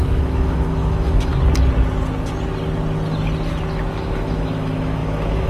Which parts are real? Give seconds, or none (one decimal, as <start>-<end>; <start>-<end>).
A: 1.3-3.9